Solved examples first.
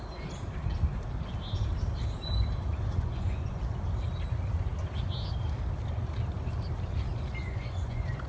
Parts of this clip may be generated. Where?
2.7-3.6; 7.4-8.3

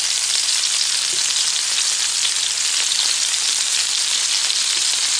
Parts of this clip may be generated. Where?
none

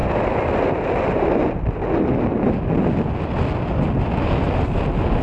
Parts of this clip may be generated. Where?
none

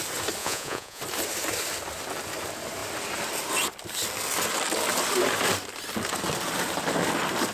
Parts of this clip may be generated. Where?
0.4-1.0